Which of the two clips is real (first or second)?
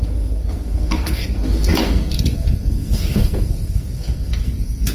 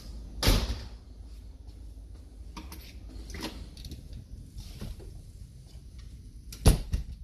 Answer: second